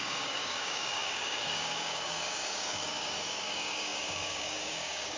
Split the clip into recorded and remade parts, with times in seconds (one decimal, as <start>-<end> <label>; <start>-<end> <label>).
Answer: 0.0-5.2 remade